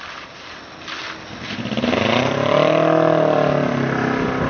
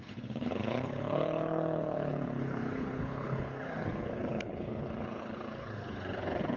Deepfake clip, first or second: second